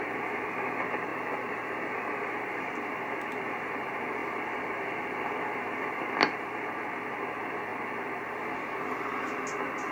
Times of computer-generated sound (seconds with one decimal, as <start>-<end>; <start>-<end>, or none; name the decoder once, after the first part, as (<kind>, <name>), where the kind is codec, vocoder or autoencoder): 1.1-2.9 (vocoder, BigVGAN v2); 4.2-6.8

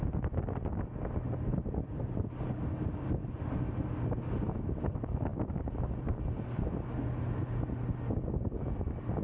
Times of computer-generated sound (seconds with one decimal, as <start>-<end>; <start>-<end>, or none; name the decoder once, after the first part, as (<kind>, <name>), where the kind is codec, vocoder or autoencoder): 1.5-3.7 (vocoder, BigVGAN v2); 5.3-6.8

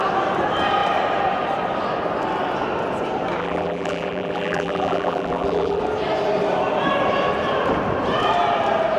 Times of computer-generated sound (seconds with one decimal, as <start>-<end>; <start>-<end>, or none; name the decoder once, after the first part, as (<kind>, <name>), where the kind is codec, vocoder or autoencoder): 3.4-5.8 (vocoder, BigVGAN v2)